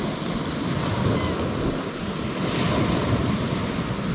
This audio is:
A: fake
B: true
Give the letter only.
B